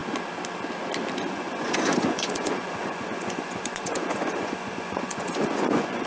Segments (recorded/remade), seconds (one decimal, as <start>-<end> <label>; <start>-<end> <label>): 0.0-1.3 recorded; 1.3-6.1 remade